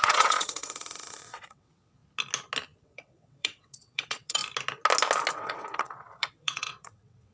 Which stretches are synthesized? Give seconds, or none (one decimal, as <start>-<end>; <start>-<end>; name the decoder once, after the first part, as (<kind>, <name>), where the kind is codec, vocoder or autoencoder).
0.0-2.0 (vocoder, WaveNeXt); 2.8-4.4; 5.3-7.3